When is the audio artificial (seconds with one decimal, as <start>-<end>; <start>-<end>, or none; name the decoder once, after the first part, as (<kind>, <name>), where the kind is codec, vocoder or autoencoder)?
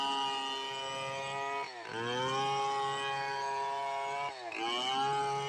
none